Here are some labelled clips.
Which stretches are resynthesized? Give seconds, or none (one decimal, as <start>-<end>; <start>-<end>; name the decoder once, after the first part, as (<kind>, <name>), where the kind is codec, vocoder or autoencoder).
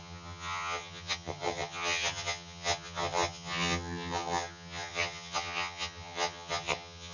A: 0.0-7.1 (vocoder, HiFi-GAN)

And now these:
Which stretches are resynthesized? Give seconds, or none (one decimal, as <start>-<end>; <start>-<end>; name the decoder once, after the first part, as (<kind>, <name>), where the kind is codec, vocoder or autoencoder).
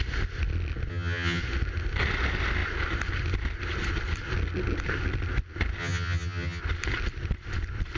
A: 0.9-1.4 (vocoder, HiFi-GAN); 5.8-6.6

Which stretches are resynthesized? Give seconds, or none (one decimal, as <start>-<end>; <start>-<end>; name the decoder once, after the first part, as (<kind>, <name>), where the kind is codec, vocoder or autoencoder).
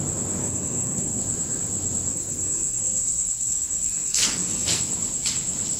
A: 0.4-1.2 (codec, SNAC); 2.1-4.8